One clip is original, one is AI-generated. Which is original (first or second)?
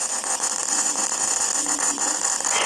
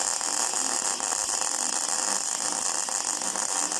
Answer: second